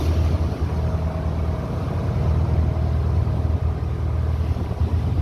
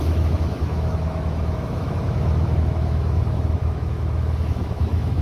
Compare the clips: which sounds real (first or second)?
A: first